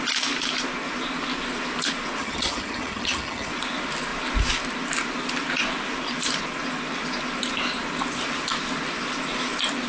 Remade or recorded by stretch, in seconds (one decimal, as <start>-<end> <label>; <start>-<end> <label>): 0.0-2.2 recorded; 2.2-3.5 remade; 3.5-9.9 recorded